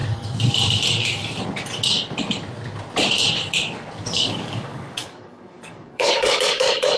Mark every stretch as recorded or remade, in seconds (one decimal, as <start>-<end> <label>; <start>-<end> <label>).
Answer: 0.0-4.0 recorded; 4.0-7.0 remade